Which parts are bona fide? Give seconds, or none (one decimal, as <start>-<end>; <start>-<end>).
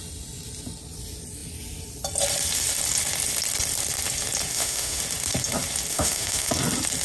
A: 0.0-4.5; 5.0-5.9; 6.5-7.0